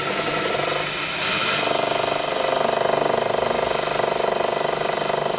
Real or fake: real